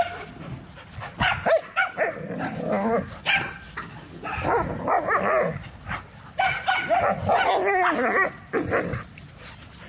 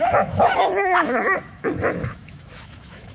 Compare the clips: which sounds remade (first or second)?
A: second